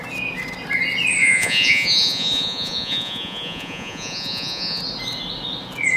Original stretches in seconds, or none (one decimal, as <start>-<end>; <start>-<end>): 0.0-1.2; 4.8-6.0